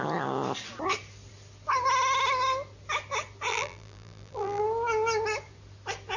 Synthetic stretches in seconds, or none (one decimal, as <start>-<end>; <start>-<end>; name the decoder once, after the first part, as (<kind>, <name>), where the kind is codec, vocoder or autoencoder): 3.5-4.6 (vocoder, BigVGAN v2)